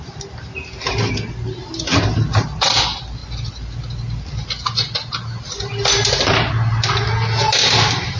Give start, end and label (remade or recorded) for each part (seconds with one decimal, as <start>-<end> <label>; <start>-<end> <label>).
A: 0.0-8.2 recorded

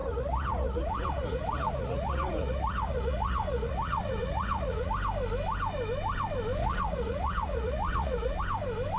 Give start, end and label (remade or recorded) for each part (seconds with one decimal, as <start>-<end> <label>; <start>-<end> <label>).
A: 0.0-4.9 remade; 4.9-6.6 recorded; 6.6-8.4 remade; 8.4-9.0 recorded

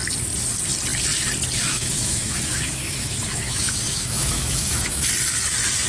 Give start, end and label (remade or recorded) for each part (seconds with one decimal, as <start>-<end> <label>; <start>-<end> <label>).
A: 0.0-1.6 recorded; 1.6-5.1 remade; 5.1-5.9 recorded

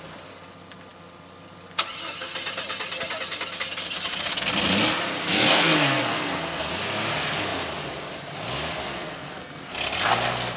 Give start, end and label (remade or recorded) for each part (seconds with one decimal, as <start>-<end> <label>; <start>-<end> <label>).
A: 0.0-5.3 recorded; 5.3-6.7 remade; 6.7-8.8 recorded; 8.8-9.7 remade; 9.7-10.6 recorded